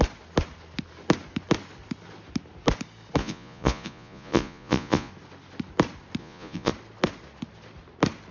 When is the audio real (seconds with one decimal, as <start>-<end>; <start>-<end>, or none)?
0.0-3.2; 5.1-6.2; 6.7-8.3